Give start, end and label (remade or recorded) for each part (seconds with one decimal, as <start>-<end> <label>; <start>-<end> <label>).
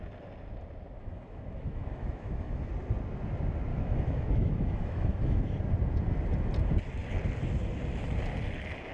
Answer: 0.0-1.0 recorded; 1.0-2.7 remade; 2.7-3.7 recorded; 3.7-5.5 remade; 5.5-8.9 recorded